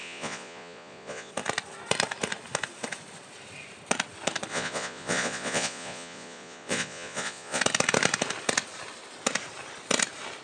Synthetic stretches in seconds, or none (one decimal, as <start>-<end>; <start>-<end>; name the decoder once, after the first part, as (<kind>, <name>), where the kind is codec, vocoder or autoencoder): 0.0-1.3 (vocoder, Vocos); 4.5-7.6